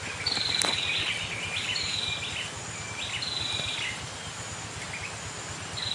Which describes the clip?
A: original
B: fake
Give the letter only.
A